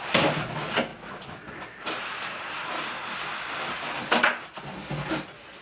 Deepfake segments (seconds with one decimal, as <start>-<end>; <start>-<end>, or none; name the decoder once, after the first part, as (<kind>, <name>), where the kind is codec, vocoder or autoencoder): none